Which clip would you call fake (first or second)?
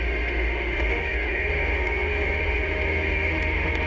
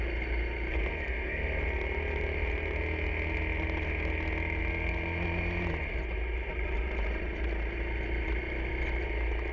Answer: first